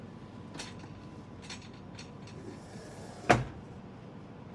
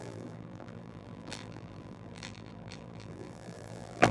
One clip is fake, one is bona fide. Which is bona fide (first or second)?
first